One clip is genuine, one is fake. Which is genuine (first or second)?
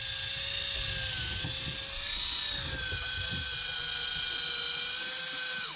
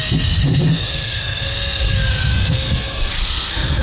first